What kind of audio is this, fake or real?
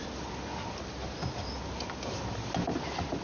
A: real